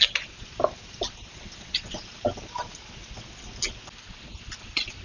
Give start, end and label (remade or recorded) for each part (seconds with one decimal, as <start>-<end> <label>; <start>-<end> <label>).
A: 0.0-5.0 recorded

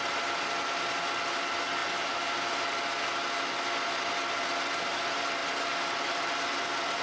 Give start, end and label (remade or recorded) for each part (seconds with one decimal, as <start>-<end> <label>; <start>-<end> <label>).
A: 0.0-7.0 recorded

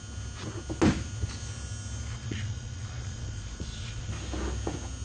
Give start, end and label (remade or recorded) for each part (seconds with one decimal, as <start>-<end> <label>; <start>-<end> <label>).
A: 0.0-2.1 recorded; 2.1-4.1 remade; 4.1-5.0 recorded

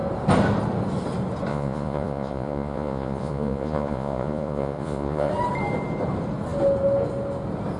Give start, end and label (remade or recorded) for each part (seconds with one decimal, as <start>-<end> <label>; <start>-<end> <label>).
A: 0.0-1.5 recorded; 1.5-5.3 remade; 5.3-7.8 recorded